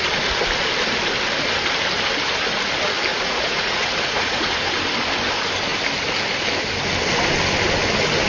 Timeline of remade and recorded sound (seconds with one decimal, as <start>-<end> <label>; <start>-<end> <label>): 0.0-3.1 recorded; 3.1-4.6 remade; 4.6-8.3 recorded